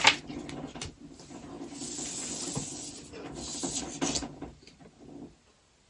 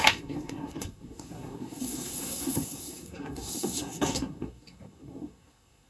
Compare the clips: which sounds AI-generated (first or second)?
second